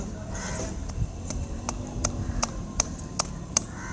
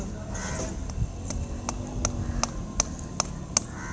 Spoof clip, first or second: first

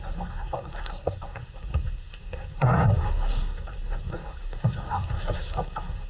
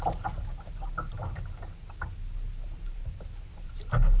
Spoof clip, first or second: first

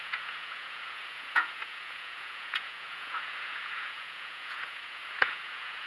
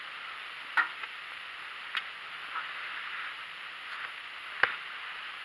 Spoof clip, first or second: first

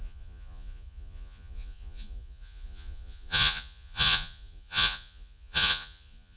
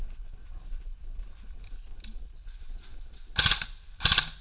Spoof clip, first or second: first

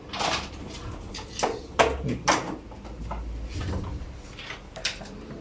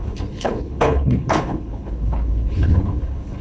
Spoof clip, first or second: second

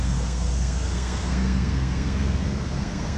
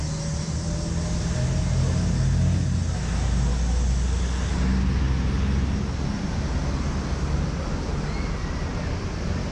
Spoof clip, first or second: first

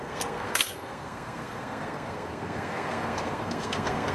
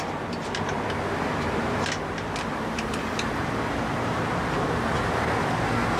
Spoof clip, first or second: first